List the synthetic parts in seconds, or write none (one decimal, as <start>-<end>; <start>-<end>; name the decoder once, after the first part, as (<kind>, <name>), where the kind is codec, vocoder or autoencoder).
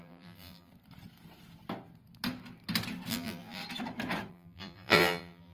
0.0-0.7 (vocoder, BigVGAN v2); 3.1-3.6; 4.3-5.5